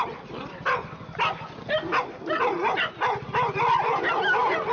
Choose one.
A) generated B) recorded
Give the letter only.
B